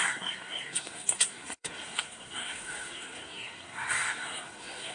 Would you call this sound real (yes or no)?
no